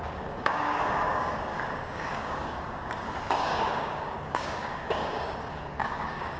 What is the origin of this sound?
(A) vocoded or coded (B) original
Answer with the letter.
A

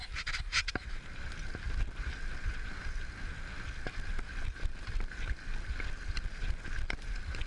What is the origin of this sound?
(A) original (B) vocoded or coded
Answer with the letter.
A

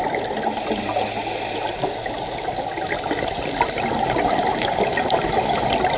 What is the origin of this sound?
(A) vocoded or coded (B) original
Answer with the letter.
B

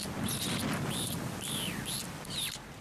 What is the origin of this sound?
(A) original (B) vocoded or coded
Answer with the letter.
A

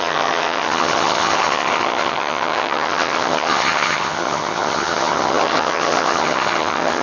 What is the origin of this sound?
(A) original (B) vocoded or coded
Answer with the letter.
B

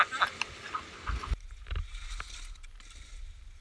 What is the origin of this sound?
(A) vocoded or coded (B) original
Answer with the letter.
B